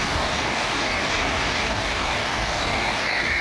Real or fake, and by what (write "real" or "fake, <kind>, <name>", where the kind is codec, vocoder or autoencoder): fake, codec, DAC